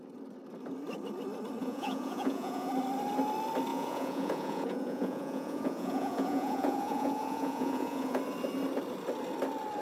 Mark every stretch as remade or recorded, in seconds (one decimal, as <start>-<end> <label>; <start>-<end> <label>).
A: 0.0-1.6 recorded; 1.6-2.7 remade; 2.7-3.7 recorded; 3.7-8.2 remade; 8.2-9.8 recorded